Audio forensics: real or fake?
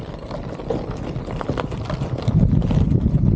real